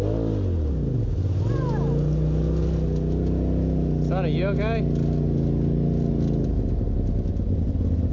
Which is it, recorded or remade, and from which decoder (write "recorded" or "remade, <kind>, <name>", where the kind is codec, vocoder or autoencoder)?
recorded